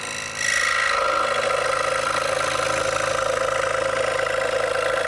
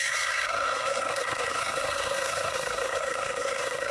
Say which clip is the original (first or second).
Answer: first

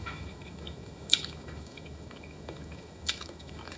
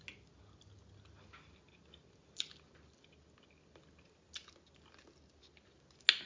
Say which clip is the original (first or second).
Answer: second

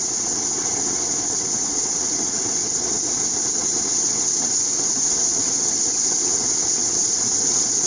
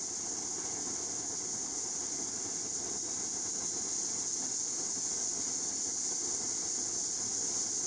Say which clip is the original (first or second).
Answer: second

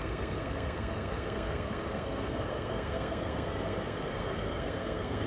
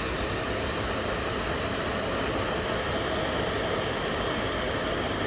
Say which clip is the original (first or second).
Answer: second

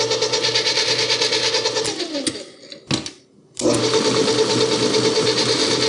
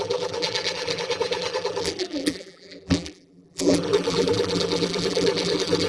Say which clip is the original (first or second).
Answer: first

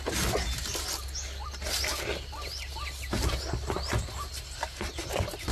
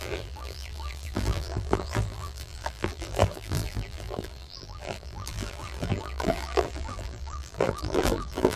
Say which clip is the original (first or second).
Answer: first